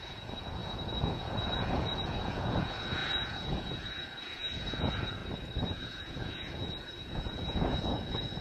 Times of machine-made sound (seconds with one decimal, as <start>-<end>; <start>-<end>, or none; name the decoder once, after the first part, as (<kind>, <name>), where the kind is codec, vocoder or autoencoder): 0.0-5.2 (vocoder, Vocos); 5.7-8.4